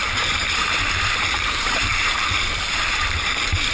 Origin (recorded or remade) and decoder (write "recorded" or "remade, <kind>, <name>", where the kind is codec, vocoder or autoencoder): remade, vocoder, BigVGAN v2